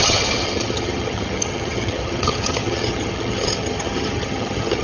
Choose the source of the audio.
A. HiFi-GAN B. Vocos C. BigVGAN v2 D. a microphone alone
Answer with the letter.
A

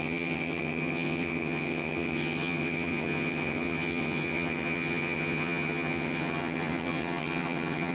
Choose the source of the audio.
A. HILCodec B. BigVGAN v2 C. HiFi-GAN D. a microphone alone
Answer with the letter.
C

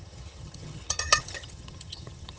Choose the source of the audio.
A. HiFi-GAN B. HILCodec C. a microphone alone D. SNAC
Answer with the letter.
A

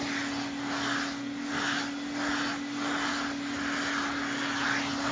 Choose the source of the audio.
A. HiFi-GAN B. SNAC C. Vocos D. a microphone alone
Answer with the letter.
D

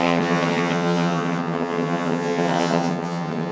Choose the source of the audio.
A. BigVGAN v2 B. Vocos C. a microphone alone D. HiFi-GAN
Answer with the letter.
D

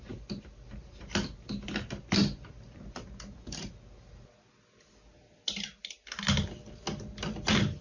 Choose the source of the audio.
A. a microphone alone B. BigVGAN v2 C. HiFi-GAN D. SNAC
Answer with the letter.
A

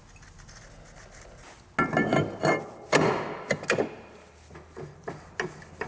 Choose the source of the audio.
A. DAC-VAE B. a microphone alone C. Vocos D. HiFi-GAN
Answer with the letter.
B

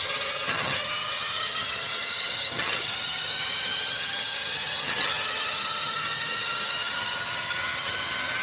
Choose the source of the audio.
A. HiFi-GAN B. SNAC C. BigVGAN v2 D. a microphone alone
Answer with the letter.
A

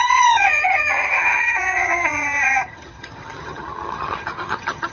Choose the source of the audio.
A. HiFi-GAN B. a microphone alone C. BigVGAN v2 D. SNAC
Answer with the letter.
A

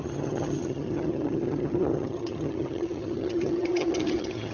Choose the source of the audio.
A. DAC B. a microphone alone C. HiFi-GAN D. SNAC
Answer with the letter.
C